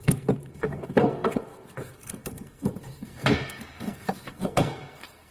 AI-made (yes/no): yes